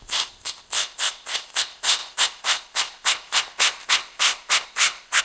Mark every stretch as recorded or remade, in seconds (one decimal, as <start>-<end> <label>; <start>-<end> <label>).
0.0-5.2 remade